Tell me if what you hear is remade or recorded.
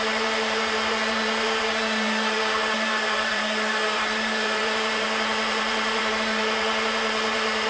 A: remade